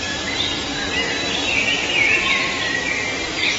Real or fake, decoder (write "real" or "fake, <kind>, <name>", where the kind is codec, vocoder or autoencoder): real